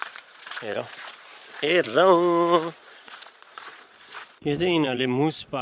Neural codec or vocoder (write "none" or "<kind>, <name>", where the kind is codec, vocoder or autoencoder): vocoder, Vocos